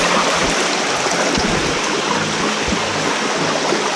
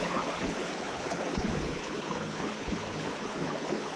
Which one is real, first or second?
first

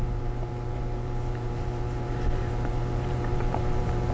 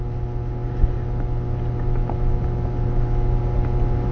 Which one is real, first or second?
second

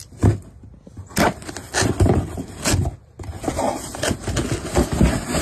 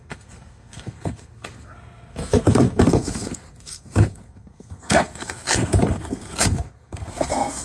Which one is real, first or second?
first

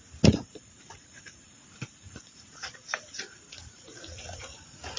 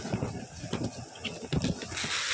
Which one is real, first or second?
second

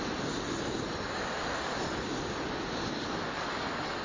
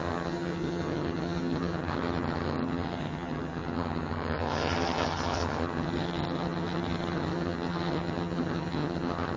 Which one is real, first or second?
first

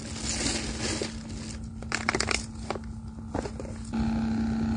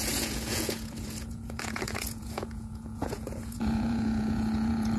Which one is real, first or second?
first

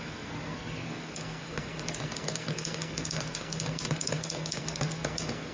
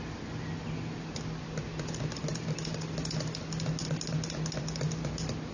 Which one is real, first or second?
second